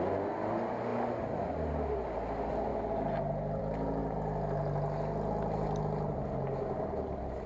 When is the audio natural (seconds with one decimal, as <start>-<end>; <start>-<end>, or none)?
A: 0.0-7.5